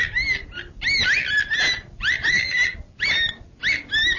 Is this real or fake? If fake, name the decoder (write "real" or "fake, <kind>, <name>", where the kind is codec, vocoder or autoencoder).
real